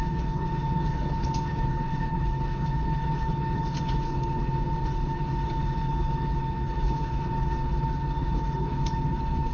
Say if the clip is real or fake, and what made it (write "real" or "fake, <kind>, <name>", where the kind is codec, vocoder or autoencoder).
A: fake, codec, HILCodec